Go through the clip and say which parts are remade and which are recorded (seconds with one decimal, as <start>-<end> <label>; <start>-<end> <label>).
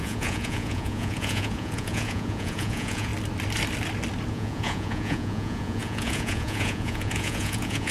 0.0-3.1 remade; 3.1-4.3 recorded; 4.3-7.9 remade